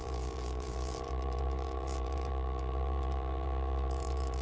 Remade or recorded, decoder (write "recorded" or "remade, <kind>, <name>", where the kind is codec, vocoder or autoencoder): remade, vocoder, BigVGAN v2